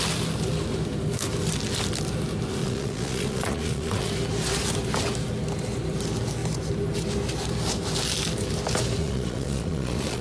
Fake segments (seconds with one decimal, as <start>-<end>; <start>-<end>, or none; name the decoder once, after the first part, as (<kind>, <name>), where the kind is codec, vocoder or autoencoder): 2.6-4.1 (vocoder, Vocos); 9.0-10.2